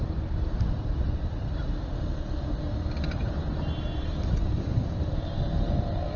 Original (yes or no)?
yes